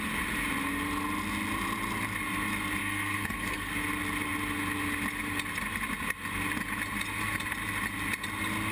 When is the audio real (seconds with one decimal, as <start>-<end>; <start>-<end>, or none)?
0.0-2.8; 3.7-8.7